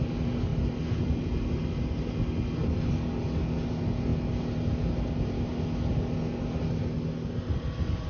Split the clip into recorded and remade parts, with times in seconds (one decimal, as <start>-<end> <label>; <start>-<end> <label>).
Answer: 0.0-8.1 recorded